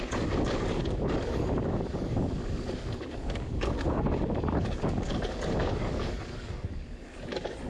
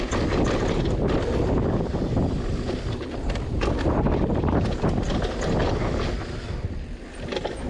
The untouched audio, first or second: second